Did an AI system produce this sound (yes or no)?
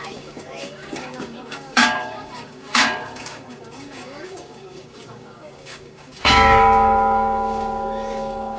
yes